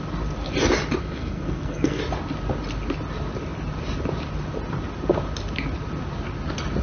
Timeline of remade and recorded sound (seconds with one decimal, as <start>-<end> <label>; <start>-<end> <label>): 0.0-1.0 recorded; 1.0-2.0 remade; 2.0-6.8 recorded